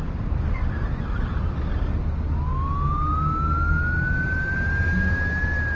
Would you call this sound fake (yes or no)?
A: no